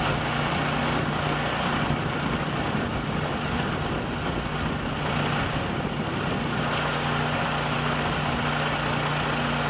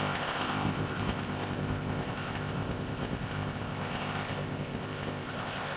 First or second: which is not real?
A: second